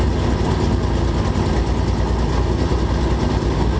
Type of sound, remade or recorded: recorded